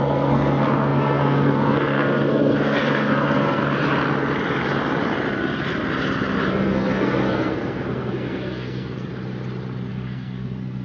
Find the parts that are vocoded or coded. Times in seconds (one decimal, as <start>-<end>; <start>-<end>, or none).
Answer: 0.0-3.6; 6.5-9.1; 9.9-10.8